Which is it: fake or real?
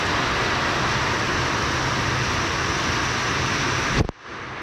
real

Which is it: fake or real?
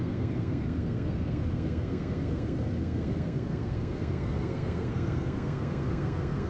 fake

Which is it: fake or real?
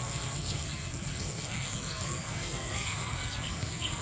fake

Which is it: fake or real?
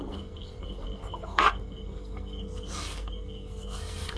fake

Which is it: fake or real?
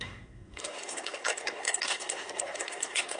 fake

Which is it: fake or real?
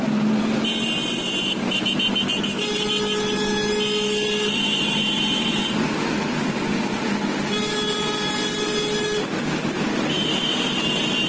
real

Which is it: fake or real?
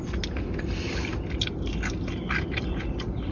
real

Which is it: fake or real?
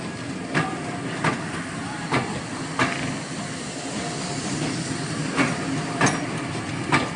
real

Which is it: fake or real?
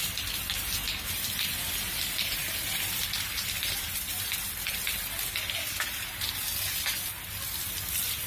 real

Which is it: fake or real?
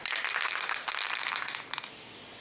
real